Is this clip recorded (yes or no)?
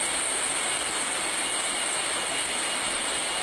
yes